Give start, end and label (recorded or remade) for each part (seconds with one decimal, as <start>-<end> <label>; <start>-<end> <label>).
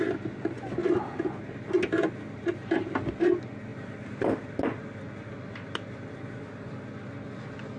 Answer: 0.0-7.8 recorded